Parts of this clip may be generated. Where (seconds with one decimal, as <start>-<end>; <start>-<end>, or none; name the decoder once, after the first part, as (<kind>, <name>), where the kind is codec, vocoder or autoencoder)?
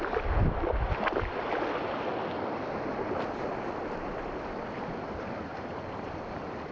5.5-6.7 (vocoder, BigVGAN v2)